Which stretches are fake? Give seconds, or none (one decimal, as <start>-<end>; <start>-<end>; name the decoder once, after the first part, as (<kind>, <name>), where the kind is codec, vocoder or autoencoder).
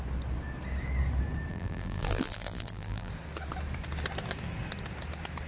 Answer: 1.5-3.1 (vocoder, BigVGAN v2)